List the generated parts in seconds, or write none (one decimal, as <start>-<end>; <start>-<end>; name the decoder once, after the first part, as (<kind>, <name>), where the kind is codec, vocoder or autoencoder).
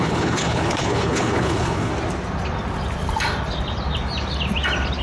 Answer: 0.0-1.9 (codec, HILCodec)